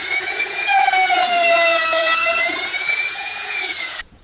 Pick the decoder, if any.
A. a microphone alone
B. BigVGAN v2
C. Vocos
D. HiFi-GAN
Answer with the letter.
C